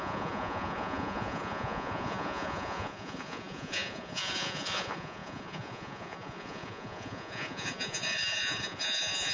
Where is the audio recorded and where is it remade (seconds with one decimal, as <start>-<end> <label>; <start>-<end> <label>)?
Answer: 0.0-9.3 remade